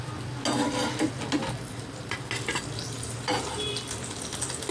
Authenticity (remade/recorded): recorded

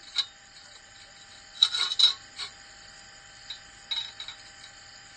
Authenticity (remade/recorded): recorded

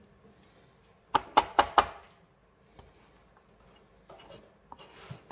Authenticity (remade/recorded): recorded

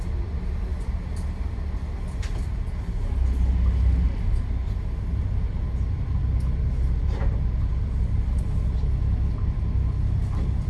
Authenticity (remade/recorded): recorded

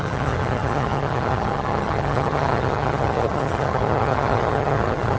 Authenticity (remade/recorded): remade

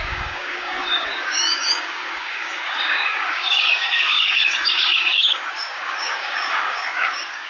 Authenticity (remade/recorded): remade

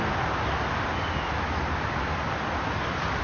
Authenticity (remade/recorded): recorded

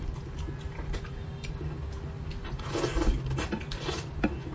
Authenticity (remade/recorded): recorded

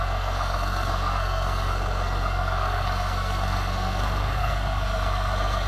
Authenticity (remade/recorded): remade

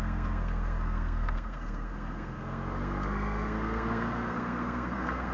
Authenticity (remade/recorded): remade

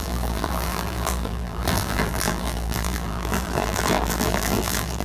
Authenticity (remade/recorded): remade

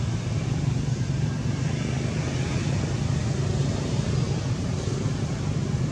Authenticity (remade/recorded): recorded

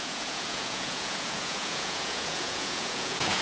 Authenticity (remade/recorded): remade